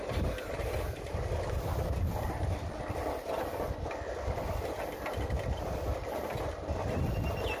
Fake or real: real